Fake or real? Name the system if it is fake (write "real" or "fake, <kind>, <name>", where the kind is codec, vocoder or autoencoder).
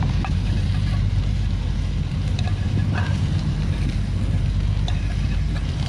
fake, vocoder, BigVGAN v2